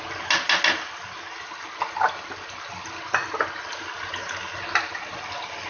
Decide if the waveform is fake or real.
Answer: real